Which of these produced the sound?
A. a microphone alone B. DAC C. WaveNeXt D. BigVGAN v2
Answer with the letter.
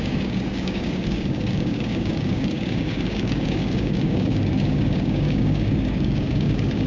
B